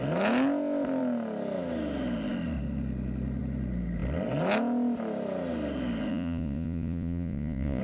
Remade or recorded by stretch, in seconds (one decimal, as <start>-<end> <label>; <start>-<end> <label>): 0.0-6.1 recorded; 6.1-7.8 remade